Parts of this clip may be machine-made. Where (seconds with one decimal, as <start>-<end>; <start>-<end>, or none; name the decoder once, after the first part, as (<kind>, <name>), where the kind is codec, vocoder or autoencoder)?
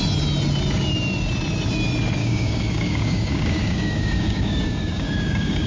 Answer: 2.2-5.7 (codec, DAC)